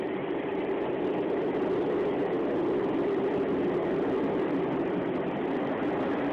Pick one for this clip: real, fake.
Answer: real